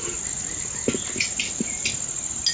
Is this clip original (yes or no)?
yes